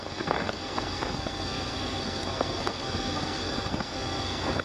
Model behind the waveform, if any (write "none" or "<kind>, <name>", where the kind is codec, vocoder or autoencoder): codec, SNAC